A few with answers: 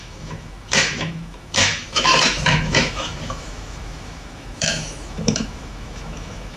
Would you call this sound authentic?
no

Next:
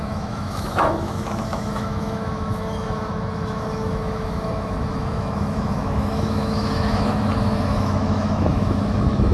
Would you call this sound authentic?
no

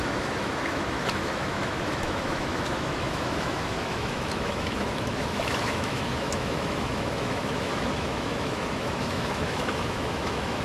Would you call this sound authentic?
no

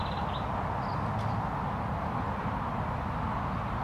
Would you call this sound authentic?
yes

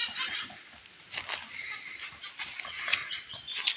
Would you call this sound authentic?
yes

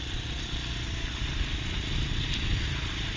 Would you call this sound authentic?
yes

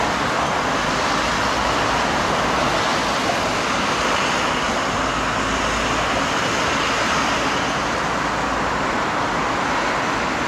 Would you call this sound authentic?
yes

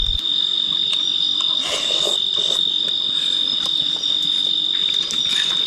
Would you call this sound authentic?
yes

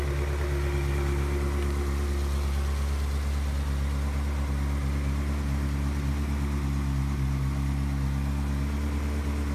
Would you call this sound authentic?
yes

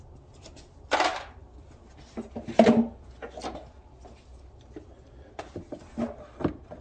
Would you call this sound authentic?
yes